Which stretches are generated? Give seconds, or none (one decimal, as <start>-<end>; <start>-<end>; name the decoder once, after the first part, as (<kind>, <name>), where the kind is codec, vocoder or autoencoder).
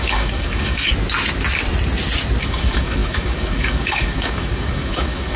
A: 0.0-0.9 (codec, DAC); 2.4-5.4